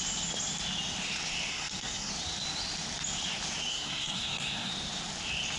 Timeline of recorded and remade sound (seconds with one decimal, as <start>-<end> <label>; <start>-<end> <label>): 0.0-1.5 recorded; 1.5-2.1 remade; 2.1-3.7 recorded; 3.7-4.7 remade; 4.7-5.6 recorded